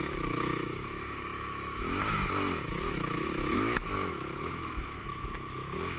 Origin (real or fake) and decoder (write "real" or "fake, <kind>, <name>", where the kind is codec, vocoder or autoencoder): fake, autoencoder, DAC-VAE